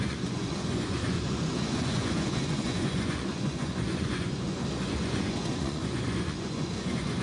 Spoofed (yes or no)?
yes